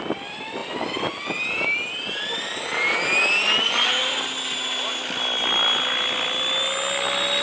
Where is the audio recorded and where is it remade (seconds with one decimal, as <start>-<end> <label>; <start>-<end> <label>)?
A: 0.0-7.4 recorded